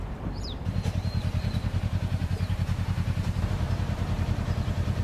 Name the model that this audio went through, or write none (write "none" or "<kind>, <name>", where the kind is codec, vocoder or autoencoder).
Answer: vocoder, BigVGAN v2